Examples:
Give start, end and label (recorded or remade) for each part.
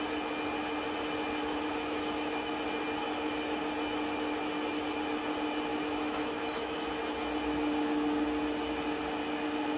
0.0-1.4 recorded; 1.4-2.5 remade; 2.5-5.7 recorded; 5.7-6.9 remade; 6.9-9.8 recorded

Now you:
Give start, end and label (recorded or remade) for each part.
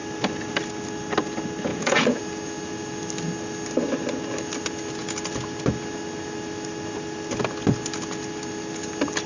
0.0-1.7 recorded; 1.7-2.2 remade; 2.2-9.3 recorded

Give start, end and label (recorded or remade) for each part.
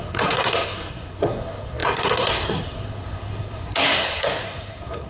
0.0-5.1 remade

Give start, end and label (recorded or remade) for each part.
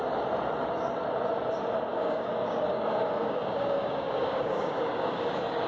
0.0-1.9 recorded; 1.9-5.3 remade; 5.3-5.7 recorded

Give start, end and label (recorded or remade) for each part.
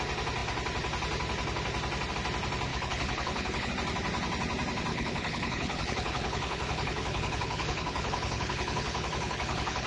0.0-2.7 recorded; 2.7-3.7 remade; 3.7-4.9 recorded; 4.9-9.9 remade